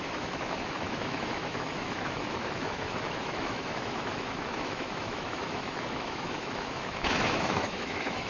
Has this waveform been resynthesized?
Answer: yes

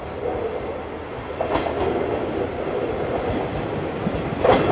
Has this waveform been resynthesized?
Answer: no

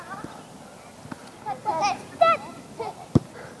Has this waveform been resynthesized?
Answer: no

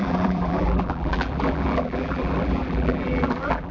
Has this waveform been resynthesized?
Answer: yes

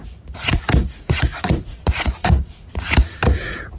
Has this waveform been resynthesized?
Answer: yes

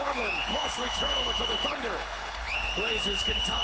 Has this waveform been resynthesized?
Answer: yes